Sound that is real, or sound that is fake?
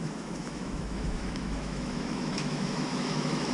fake